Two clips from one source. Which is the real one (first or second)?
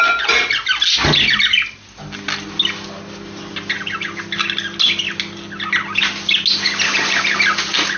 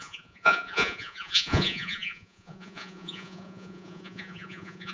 first